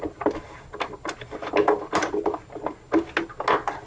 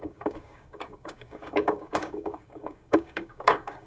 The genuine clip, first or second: first